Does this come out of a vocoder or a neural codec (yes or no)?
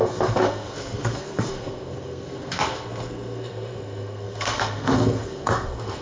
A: yes